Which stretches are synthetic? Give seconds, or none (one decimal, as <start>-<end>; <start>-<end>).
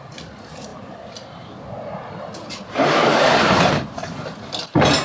none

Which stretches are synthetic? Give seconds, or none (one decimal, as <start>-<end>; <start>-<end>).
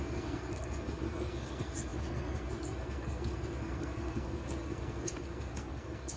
0.0-6.2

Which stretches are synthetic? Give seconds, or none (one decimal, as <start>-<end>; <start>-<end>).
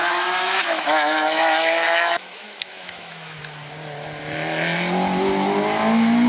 0.0-3.4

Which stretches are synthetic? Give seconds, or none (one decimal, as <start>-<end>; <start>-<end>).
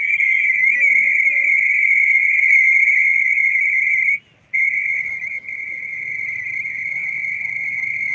none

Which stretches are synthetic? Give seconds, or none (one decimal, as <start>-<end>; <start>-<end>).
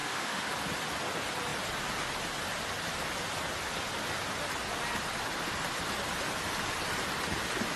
0.0-0.5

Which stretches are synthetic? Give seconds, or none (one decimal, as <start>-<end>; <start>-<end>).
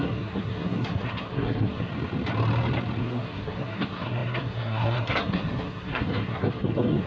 0.0-1.9; 3.0-7.1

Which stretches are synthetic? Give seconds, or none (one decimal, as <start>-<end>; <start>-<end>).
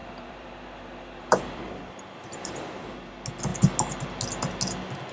0.0-3.1